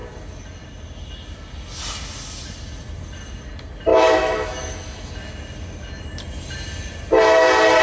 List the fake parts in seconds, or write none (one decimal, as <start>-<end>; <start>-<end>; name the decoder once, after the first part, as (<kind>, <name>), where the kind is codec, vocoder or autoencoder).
3.9-5.1 (autoencoder, DAC-VAE)

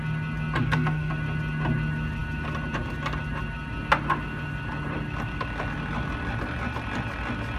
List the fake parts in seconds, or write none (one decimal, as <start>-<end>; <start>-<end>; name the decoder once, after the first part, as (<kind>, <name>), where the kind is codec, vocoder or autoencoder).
0.6-1.1 (codec, SNAC)

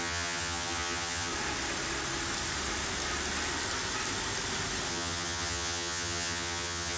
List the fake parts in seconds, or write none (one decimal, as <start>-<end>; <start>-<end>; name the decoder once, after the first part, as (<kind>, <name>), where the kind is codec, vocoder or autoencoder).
0.0-1.3 (vocoder, HiFi-GAN); 4.9-7.0